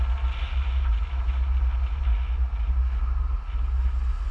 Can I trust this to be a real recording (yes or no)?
yes